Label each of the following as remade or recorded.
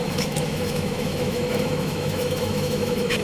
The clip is remade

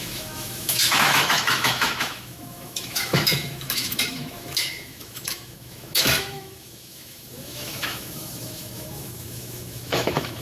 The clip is remade